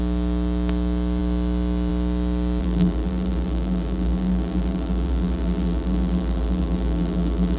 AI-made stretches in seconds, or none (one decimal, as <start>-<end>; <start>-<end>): 2.6-7.6